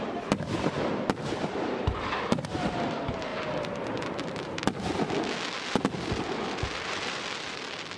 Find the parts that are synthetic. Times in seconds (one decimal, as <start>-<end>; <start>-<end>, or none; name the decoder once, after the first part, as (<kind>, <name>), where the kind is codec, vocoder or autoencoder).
0.0-3.3 (vocoder, BigVGAN v2); 5.7-8.0

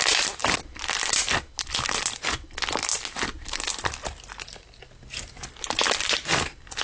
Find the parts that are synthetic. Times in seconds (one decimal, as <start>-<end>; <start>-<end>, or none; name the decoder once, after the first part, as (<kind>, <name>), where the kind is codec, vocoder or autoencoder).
none

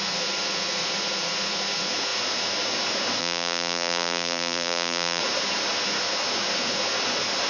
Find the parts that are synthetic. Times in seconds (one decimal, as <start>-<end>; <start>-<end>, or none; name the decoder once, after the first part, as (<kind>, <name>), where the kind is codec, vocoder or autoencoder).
3.2-5.2 (vocoder, BigVGAN v2)

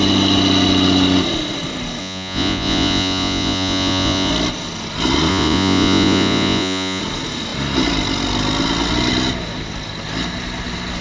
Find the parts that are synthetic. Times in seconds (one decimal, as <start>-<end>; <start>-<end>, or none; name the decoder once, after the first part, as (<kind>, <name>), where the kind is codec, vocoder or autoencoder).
2.0-4.3 (vocoder, Vocos); 5.3-7.0

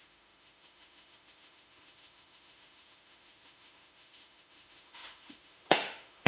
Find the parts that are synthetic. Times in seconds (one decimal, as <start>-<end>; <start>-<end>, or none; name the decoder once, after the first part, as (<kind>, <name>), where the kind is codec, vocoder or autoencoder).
0.0-6.3 (autoencoder, DAC-VAE)

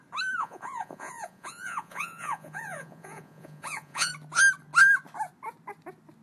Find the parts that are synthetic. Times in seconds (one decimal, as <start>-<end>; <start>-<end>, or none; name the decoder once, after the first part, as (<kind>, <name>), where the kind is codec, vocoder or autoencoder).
0.4-4.1 (vocoder, Vocos)